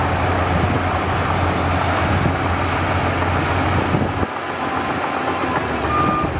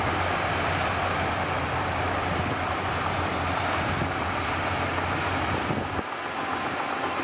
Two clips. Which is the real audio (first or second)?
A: first